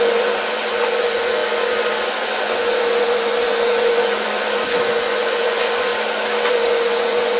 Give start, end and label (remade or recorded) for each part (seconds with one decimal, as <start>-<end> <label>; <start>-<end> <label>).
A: 0.0-5.9 remade; 5.9-6.5 recorded; 6.5-7.4 remade